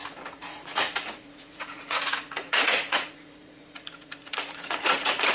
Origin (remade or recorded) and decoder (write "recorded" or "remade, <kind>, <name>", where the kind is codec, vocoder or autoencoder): remade, vocoder, Vocos